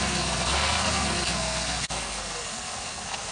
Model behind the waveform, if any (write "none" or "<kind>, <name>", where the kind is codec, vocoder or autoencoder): codec, SNAC